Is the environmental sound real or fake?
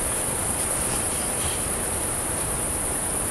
fake